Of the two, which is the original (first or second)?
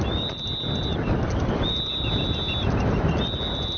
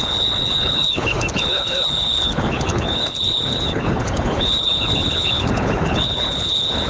first